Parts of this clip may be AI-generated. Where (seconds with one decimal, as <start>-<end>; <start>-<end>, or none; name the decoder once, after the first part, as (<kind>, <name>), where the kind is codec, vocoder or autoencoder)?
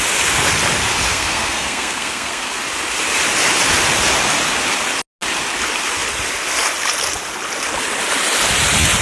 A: 1.1-2.6 (codec, SNAC)